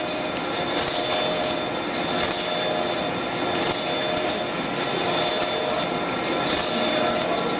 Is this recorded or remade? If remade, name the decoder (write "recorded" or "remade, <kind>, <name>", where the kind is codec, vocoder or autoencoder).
recorded